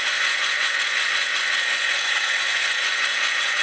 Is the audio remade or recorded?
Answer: remade